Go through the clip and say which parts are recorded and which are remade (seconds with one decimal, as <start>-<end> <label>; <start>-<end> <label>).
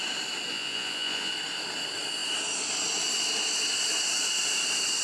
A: 0.0-0.5 recorded; 0.5-1.3 remade; 1.3-5.0 recorded